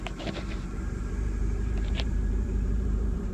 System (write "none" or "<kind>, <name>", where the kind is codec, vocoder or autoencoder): vocoder, BigVGAN v2